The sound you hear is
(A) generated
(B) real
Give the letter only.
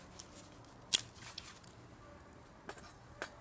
B